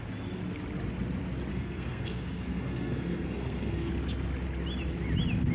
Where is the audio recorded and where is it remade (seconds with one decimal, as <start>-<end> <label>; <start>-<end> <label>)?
0.0-1.5 recorded; 1.5-3.9 remade; 3.9-5.5 recorded